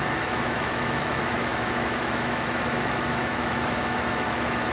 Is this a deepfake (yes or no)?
yes